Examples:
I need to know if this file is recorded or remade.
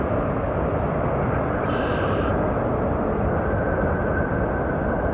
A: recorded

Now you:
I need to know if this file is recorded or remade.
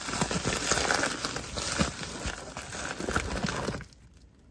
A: recorded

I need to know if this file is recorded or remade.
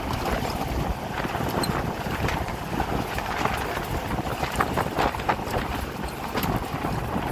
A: recorded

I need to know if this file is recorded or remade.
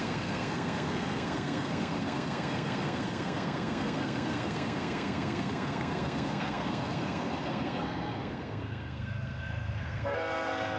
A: remade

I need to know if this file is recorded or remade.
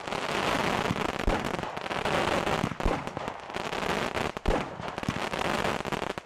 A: recorded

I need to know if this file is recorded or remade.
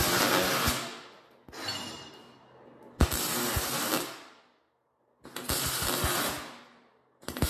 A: recorded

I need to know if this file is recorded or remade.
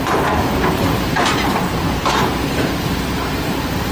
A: remade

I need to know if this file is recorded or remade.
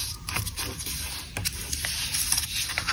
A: recorded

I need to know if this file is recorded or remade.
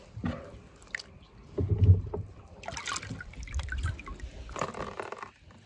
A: recorded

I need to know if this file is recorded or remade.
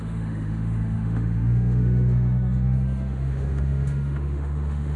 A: remade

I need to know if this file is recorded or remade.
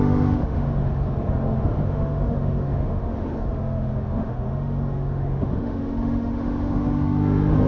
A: remade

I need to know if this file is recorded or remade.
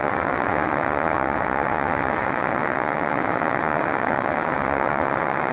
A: remade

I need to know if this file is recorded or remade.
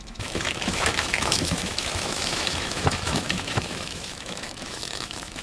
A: remade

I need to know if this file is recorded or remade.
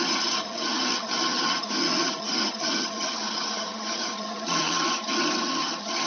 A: remade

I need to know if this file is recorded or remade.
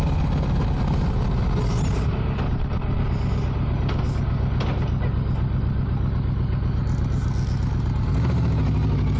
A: recorded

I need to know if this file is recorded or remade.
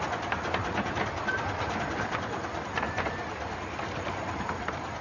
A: recorded